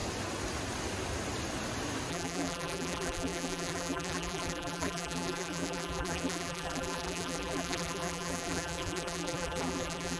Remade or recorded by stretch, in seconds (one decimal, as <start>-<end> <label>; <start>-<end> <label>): 0.0-2.1 recorded; 2.1-10.2 remade